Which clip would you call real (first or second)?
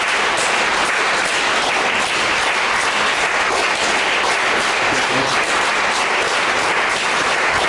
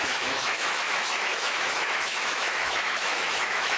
first